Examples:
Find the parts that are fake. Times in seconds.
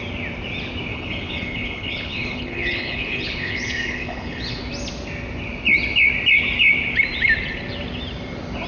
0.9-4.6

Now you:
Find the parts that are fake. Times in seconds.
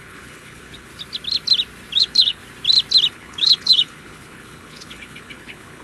0.0-0.9; 2.0-2.4; 3.1-5.8